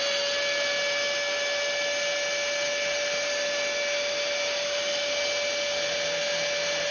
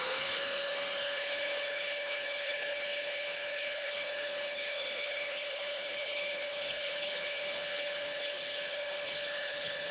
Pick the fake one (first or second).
second